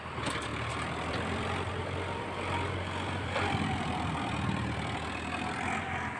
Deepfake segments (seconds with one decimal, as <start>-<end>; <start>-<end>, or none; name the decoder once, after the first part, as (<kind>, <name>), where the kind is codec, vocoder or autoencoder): 0.5-4.2 (vocoder, BigVGAN v2)